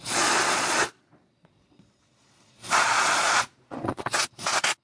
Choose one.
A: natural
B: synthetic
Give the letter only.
B